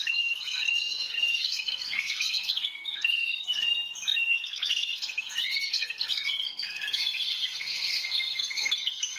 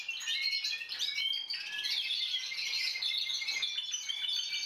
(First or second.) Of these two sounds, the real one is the second